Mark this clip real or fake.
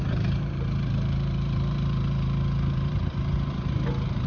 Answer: fake